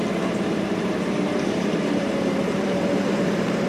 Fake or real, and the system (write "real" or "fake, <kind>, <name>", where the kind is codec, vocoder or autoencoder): fake, vocoder, BigVGAN v2